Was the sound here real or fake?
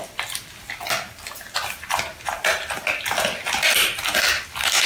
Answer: real